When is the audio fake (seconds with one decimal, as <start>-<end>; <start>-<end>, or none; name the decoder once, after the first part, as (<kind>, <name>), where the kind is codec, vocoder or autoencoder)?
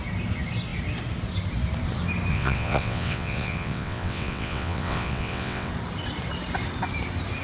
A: 2.3-5.7 (vocoder, WaveNeXt)